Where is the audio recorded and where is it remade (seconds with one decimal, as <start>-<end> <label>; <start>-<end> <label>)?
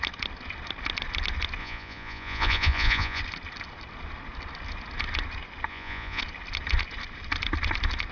0.0-1.6 recorded; 1.6-3.2 remade; 3.2-5.7 recorded; 5.7-6.2 remade; 6.2-8.1 recorded